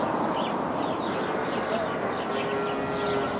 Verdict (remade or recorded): recorded